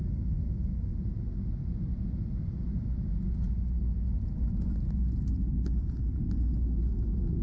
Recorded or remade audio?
recorded